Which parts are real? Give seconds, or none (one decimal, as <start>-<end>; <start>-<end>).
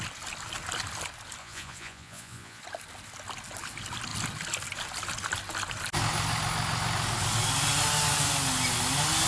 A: 0.0-1.4; 2.6-9.3